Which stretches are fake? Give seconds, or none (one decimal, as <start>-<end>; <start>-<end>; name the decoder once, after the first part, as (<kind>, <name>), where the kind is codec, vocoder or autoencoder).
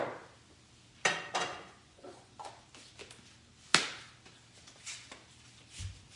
1.5-2.5 (vocoder, Vocos)